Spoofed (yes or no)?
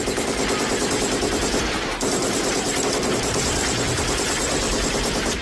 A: yes